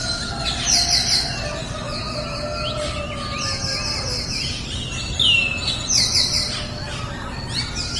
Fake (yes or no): no